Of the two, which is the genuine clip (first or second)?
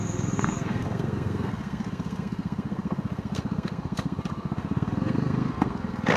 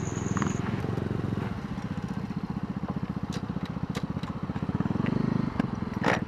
second